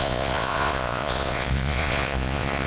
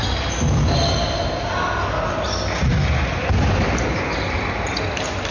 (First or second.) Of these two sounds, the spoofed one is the first